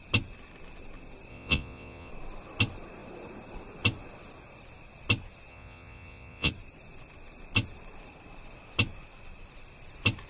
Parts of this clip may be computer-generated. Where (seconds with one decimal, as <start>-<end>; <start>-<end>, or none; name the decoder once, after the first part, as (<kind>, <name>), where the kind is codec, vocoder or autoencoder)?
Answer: 1.3-2.1 (vocoder, Vocos); 5.5-6.5